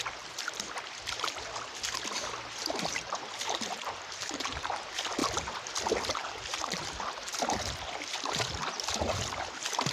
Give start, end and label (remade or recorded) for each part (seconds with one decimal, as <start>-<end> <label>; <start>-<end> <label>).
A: 0.0-2.6 recorded; 2.6-4.7 remade; 4.7-6.2 recorded; 6.2-6.8 remade; 6.8-9.9 recorded